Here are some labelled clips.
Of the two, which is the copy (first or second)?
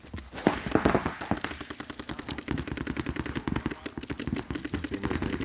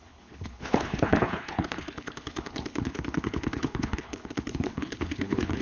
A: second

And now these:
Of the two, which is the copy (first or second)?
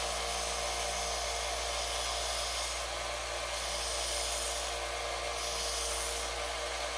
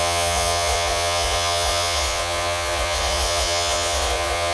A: second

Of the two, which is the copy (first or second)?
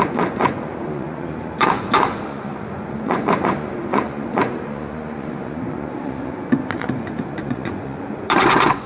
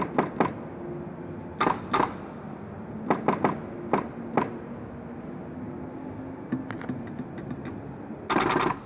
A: first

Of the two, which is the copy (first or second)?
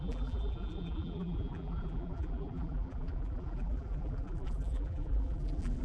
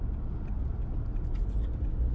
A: first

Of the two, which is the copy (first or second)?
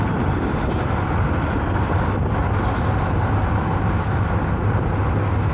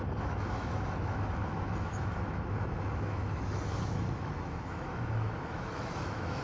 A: second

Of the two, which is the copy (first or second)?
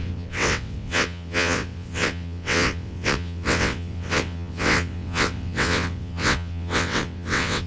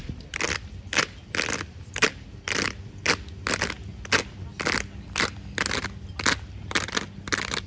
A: first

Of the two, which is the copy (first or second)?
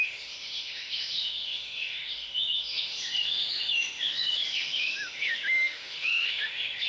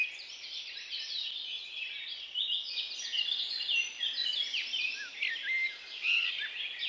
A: first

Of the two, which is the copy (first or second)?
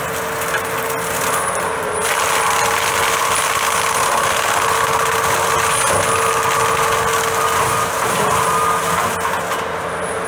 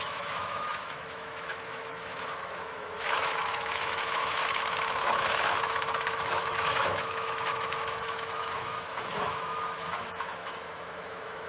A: second